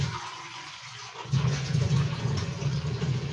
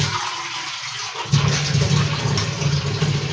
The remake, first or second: first